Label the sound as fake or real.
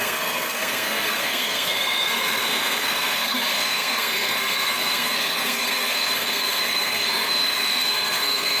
fake